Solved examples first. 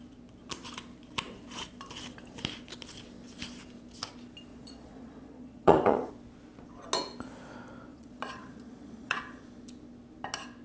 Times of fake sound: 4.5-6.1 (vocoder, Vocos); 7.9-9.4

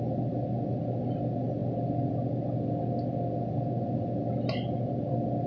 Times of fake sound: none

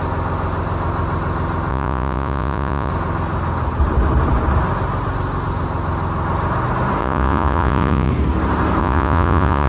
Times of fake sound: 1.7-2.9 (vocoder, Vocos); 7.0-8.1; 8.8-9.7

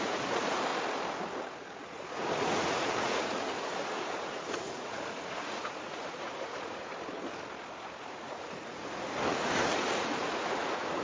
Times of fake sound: 0.0-0.7 (vocoder, Vocos); 2.1-6.9; 8.1-11.0

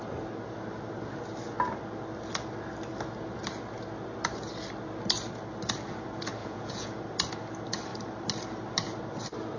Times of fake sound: 6.4-6.9 (vocoder, Vocos)

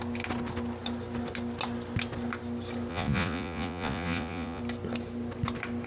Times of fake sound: 2.9-4.6 (vocoder, Vocos)

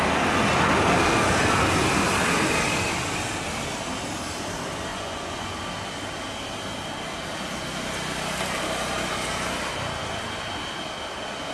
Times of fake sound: 4.9-5.6 (vocoder, Vocos)

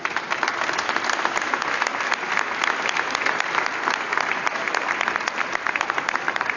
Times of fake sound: none